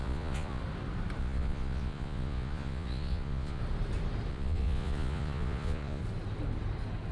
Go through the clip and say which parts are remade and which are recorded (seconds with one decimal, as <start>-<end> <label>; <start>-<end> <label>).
0.0-0.6 remade; 0.6-1.2 recorded; 1.2-3.6 remade; 3.6-4.3 recorded; 4.3-6.0 remade; 6.0-7.1 recorded